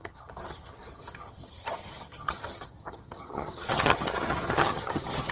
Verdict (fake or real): fake